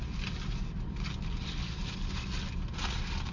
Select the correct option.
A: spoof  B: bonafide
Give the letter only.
B